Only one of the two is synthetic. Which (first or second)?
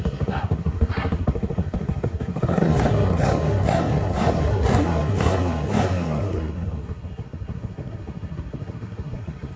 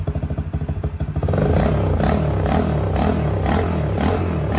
first